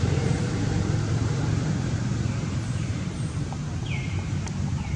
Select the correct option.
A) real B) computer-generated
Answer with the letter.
B